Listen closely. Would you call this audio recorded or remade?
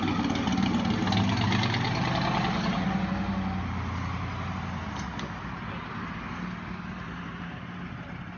recorded